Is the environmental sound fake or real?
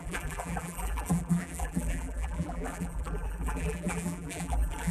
fake